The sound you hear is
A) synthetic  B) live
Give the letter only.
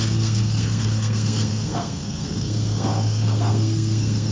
A